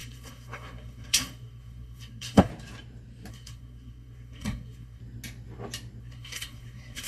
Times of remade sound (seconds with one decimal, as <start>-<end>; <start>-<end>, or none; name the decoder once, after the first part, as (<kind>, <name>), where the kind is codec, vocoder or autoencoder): 0.0-2.5 (codec, SNAC); 3.3-5.0; 6.0-7.1